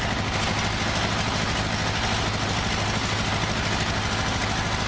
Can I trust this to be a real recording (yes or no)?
yes